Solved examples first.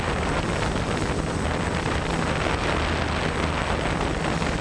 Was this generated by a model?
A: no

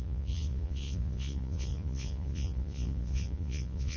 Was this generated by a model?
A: yes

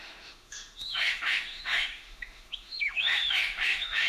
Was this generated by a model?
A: yes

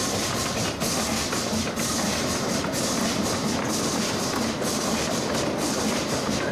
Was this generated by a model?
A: no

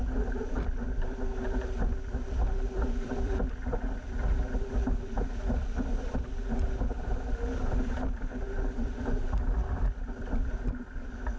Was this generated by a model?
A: yes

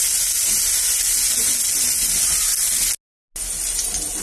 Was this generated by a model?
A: no